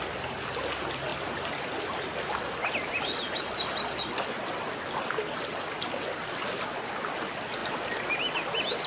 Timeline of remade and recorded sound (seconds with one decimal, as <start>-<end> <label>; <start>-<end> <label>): 0.0-8.9 recorded